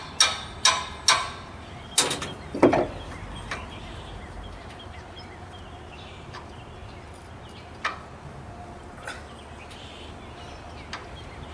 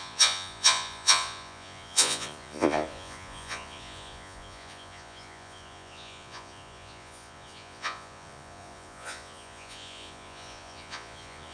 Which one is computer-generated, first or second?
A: second